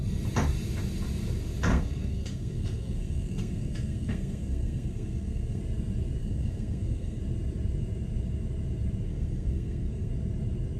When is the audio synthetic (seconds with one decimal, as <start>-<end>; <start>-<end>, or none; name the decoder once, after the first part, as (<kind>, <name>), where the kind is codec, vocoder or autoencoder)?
1.7-5.6 (codec, SNAC); 6.2-7.2; 9.1-10.1